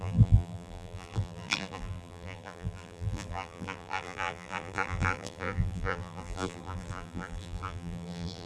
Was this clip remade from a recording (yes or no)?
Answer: yes